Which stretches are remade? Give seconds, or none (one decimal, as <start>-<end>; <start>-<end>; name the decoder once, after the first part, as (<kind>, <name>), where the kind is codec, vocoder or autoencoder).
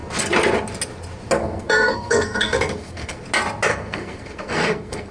1.4-3.2 (codec, SNAC); 3.7-5.1